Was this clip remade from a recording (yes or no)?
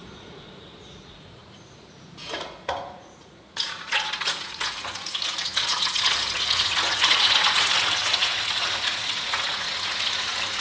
yes